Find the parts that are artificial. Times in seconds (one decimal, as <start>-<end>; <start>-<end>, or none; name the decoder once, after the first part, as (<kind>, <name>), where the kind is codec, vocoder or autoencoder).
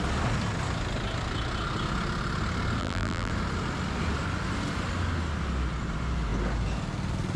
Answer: 2.8-3.3 (vocoder, BigVGAN v2)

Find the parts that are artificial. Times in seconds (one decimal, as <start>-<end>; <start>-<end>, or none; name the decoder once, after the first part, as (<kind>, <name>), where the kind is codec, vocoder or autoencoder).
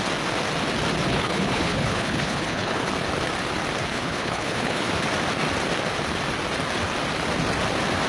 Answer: 1.1-2.9 (codec, HILCodec); 3.9-4.9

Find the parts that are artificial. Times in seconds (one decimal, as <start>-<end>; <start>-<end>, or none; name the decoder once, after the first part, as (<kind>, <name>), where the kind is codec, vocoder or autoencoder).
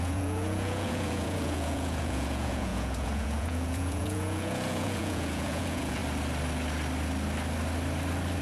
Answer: 0.0-6.0 (vocoder, Vocos)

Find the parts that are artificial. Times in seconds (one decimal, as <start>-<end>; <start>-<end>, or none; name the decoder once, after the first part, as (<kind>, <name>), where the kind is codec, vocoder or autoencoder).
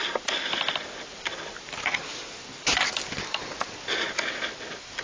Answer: 0.0-1.3 (vocoder, BigVGAN v2); 4.3-5.0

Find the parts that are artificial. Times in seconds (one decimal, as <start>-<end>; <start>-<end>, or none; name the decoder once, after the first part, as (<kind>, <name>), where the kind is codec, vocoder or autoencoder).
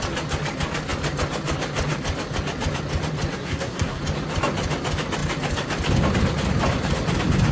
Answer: 3.3-4.0 (codec, SNAC)